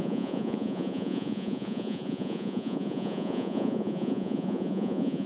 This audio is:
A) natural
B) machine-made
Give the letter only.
B